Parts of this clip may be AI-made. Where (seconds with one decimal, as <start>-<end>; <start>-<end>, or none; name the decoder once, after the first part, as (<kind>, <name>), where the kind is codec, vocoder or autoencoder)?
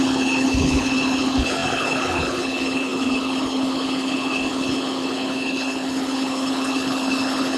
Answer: 0.0-7.6 (codec, HILCodec)